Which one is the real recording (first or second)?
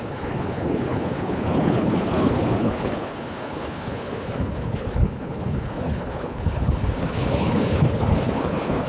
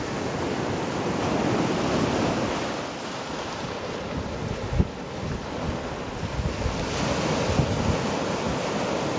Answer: second